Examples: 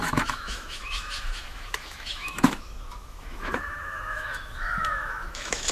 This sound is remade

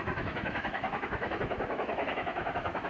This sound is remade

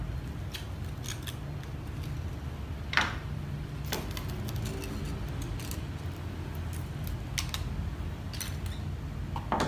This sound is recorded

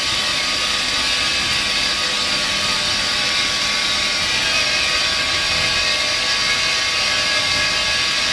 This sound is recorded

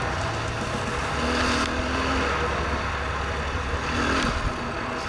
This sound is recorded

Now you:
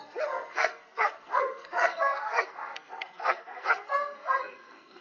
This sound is remade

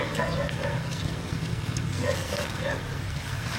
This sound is remade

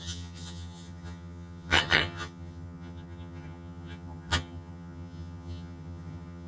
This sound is remade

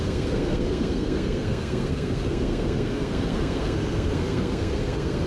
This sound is remade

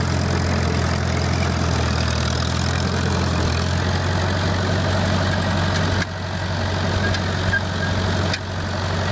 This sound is recorded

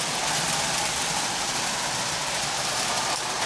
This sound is recorded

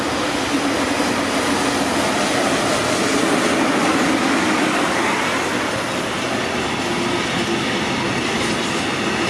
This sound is recorded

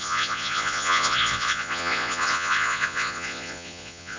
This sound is remade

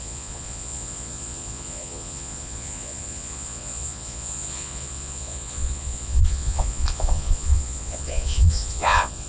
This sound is remade